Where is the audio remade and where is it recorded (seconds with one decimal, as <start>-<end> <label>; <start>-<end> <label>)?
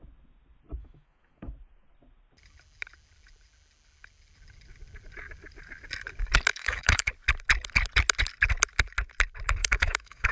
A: 0.0-0.8 recorded; 0.8-1.5 remade; 1.5-6.5 recorded; 6.5-7.1 remade; 7.1-9.6 recorded; 9.6-10.3 remade